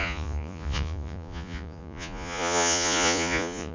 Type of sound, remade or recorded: remade